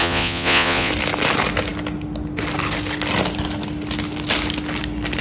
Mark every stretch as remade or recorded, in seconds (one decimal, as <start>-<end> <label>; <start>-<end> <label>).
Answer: 0.0-0.9 remade; 0.9-5.2 recorded